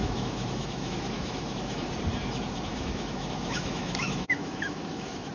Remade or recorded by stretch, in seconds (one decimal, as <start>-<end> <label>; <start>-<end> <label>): 0.0-1.9 remade; 1.9-2.7 recorded; 2.7-5.3 remade